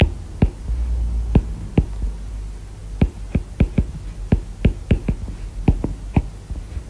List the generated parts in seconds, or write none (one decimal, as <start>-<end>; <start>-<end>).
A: none